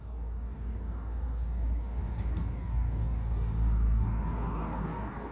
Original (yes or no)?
no